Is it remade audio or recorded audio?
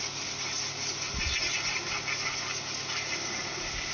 recorded